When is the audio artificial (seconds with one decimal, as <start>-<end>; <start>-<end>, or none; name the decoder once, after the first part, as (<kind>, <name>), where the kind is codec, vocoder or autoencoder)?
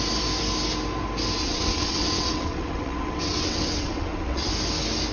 1.4-4.5 (vocoder, WaveNeXt)